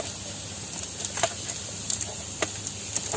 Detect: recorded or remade recorded